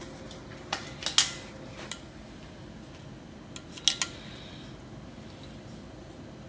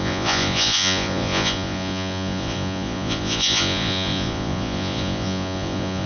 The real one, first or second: first